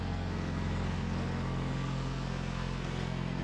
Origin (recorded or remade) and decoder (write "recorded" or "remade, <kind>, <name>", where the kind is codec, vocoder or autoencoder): remade, codec, SNAC